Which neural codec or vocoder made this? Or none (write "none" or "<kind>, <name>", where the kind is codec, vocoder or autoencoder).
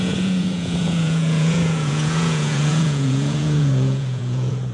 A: vocoder, Vocos